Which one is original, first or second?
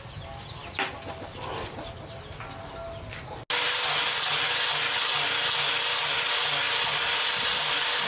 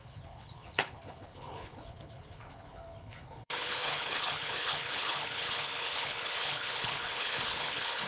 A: first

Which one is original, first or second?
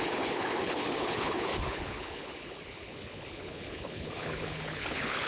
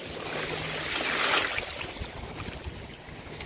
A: second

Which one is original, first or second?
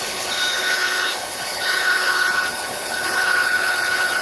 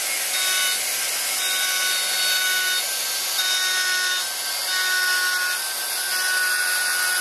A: second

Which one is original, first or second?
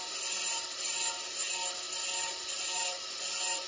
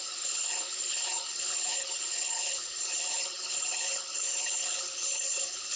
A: first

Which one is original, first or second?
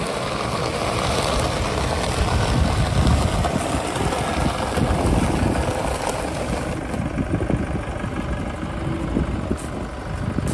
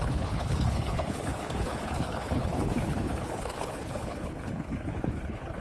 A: first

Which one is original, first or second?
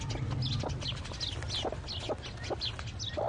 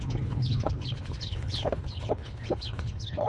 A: first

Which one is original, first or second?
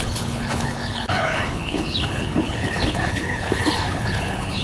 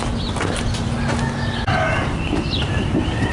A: second